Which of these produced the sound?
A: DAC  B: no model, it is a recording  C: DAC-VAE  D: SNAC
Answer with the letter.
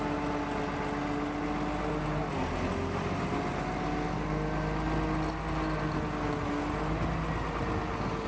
B